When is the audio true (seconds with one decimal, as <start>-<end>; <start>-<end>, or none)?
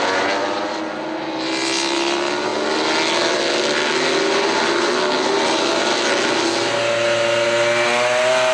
0.0-8.5